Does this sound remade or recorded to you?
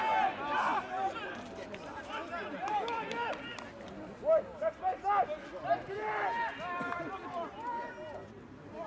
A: recorded